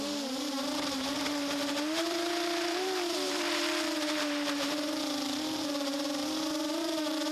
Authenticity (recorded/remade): remade